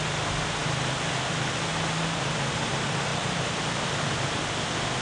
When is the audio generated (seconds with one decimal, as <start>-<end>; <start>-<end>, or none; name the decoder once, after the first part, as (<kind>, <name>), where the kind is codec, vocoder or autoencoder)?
3.1-4.4 (vocoder, BigVGAN v2)